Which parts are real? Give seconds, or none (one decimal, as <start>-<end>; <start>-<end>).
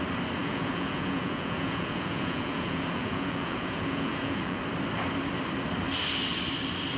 0.0-0.4; 4.6-7.0